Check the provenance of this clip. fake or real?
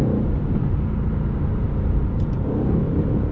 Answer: fake